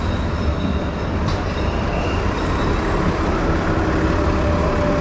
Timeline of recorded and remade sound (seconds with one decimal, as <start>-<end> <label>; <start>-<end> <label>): 0.0-1.5 recorded; 1.5-3.8 remade; 3.8-5.0 recorded